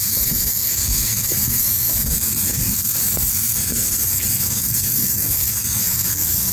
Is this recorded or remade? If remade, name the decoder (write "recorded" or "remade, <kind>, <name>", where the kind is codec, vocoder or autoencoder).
remade, codec, SNAC